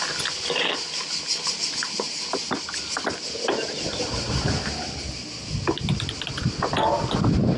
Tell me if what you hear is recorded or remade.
recorded